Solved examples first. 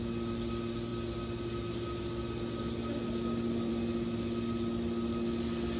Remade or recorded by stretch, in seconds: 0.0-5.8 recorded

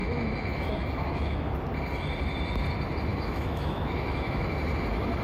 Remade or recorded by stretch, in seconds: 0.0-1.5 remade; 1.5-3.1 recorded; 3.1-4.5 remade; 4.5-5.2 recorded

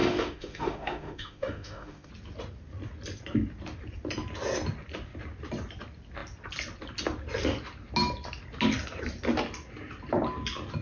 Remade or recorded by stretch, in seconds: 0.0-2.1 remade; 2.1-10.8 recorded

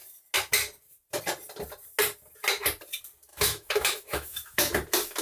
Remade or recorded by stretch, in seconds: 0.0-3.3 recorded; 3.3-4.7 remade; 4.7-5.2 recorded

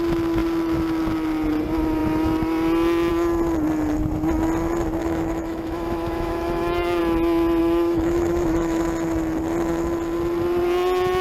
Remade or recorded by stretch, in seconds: 0.0-5.0 recorded; 5.0-7.0 remade; 7.0-7.6 recorded; 7.6-8.8 remade; 8.8-11.2 recorded

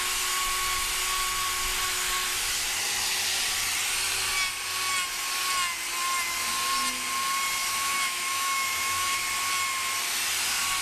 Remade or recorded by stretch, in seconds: 0.0-7.6 recorded; 7.6-9.2 remade; 9.2-10.8 recorded